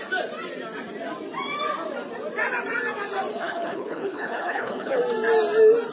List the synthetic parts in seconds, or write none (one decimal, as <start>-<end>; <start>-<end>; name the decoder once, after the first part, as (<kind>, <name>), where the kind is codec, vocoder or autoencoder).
3.3-5.0 (codec, HILCodec)